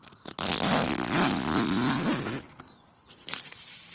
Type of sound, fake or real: real